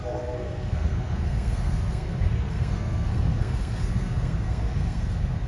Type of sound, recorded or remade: remade